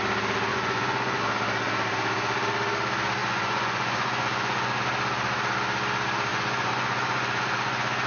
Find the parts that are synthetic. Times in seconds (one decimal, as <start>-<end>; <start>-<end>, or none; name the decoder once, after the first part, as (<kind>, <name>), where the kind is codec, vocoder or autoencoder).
0.5-1.2 (vocoder, Vocos); 3.2-4.8; 6.3-8.1